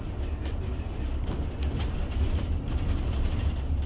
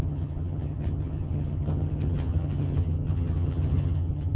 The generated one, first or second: second